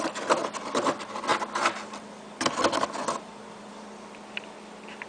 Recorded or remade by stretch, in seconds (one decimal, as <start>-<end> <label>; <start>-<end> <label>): 0.0-5.1 recorded